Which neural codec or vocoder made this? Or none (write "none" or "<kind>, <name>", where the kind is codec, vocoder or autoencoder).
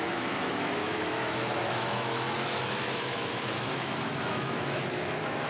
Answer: autoencoder, DAC-VAE